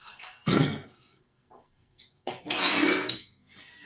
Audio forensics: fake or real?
fake